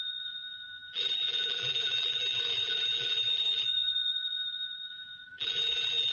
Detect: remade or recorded remade